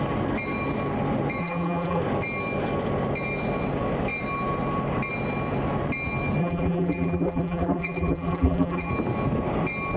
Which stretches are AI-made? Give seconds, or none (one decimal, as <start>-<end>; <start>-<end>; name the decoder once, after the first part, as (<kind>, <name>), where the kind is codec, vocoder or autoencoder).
1.4-2.0 (vocoder, BigVGAN v2); 6.4-8.9